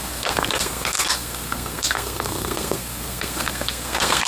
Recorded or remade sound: remade